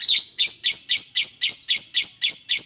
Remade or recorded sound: recorded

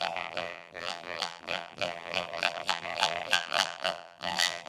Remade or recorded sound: remade